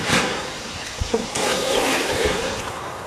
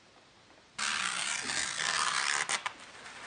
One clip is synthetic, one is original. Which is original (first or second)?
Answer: second